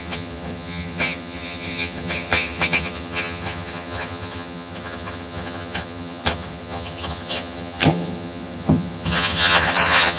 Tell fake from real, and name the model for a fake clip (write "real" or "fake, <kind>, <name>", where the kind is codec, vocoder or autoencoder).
fake, vocoder, HiFi-GAN